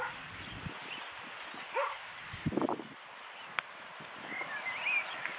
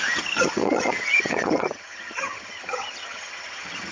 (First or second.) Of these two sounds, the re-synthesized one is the second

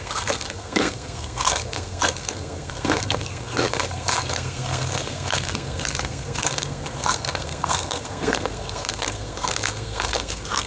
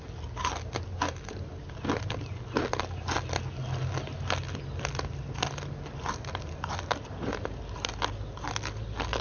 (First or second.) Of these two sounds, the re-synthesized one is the first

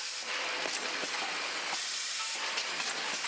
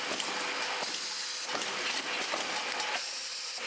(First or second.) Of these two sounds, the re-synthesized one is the first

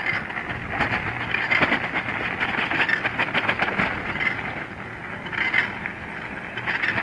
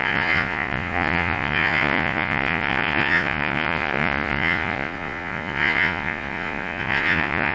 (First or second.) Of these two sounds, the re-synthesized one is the second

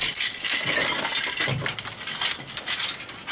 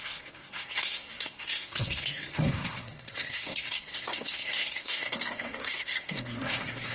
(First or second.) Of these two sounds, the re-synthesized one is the second